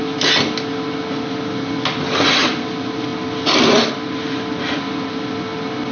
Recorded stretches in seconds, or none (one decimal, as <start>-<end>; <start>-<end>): 0.0-5.9

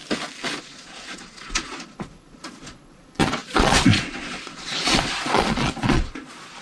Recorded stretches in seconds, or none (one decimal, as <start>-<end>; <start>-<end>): 0.0-0.6

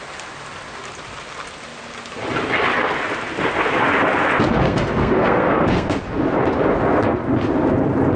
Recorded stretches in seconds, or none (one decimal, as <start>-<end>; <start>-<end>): 0.0-4.6; 6.0-8.2

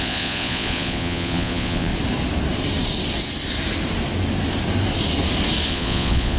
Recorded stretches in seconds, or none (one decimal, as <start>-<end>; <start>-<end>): 1.9-5.7

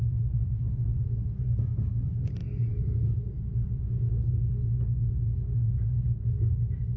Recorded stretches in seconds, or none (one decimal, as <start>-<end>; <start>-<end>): 0.0-7.0

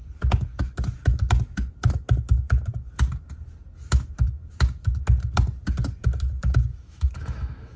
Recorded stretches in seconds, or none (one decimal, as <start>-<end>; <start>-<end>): 0.0-6.7

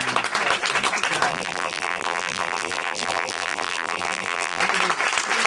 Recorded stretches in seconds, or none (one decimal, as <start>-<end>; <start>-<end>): 0.0-1.3; 4.6-5.5